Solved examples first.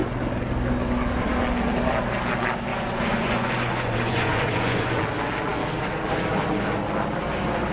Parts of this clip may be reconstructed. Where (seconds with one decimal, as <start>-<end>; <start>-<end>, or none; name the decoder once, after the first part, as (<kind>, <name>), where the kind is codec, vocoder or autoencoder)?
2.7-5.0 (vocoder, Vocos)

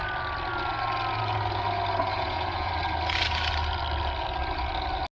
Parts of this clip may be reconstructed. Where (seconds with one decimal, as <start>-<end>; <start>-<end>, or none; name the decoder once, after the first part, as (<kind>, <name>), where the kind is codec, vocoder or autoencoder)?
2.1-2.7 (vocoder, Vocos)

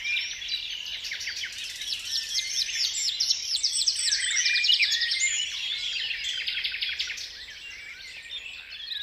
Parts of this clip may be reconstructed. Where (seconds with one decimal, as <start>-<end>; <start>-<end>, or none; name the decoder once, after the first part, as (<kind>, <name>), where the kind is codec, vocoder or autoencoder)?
4.0-5.4 (vocoder, Vocos)

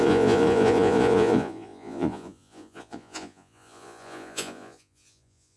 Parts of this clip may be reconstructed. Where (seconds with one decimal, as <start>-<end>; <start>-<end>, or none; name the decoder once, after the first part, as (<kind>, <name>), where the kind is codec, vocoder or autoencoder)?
0.0-5.6 (vocoder, Vocos)

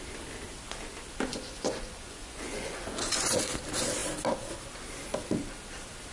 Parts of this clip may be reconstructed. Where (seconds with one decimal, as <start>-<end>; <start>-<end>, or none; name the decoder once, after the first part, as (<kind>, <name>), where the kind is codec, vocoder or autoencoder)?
1.3-3.4 (vocoder, Vocos)

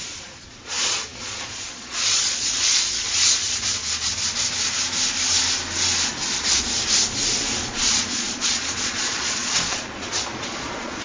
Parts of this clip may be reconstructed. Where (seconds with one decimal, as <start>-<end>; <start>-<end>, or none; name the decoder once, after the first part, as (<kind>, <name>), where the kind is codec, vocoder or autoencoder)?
0.0-3.8 (vocoder, Vocos); 7.6-11.0

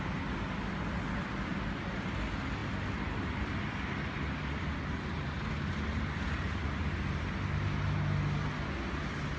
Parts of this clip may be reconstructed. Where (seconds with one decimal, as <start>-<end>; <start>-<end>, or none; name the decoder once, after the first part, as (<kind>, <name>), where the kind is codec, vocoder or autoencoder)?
none

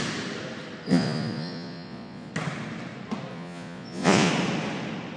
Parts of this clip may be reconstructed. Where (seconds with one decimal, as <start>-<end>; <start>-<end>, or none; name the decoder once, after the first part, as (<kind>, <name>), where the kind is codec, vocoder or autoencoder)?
0.9-2.3 (vocoder, Vocos); 3.3-4.3